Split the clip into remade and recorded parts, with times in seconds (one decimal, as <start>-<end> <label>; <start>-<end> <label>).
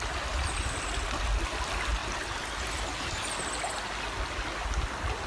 0.0-5.3 recorded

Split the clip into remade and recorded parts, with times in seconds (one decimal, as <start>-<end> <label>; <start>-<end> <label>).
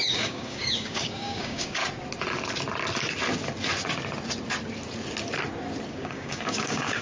0.0-1.8 remade; 1.8-5.9 recorded; 5.9-7.0 remade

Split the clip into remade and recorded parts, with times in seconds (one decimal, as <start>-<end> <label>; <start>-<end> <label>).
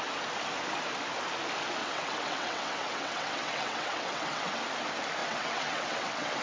0.0-1.8 recorded; 1.8-4.6 remade; 4.6-5.2 recorded; 5.2-6.4 remade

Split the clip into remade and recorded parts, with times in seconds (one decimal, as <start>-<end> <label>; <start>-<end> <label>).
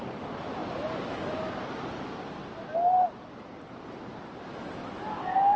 0.0-5.6 recorded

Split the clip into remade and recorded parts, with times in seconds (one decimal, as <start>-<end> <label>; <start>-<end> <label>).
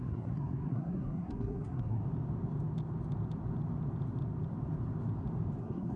0.0-2.0 remade; 2.0-5.6 recorded; 5.6-6.0 remade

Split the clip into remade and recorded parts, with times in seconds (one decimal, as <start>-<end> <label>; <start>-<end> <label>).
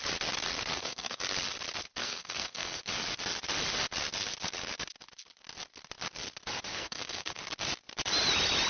0.0-0.7 recorded; 0.7-1.2 remade; 1.2-2.0 recorded; 2.0-2.8 remade; 2.8-6.7 recorded; 6.7-7.4 remade; 7.4-8.7 recorded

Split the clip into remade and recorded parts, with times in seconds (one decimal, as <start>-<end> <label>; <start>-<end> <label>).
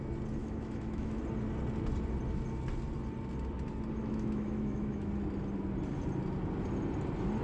0.0-0.4 recorded; 0.4-1.2 remade; 1.2-4.0 recorded; 4.0-5.1 remade; 5.1-7.4 recorded